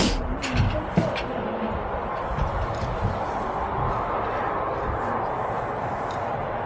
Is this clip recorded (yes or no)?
yes